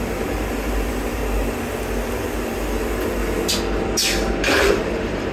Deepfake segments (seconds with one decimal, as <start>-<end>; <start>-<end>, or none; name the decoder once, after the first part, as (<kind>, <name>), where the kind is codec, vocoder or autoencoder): 0.0-1.2 (vocoder, BigVGAN v2); 4.4-5.3